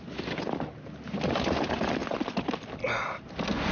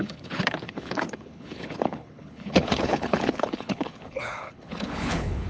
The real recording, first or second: first